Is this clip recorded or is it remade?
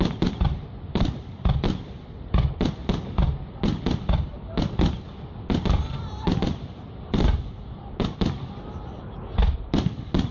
recorded